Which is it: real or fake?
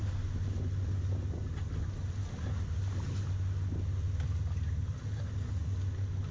real